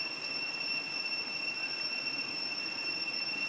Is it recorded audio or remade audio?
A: recorded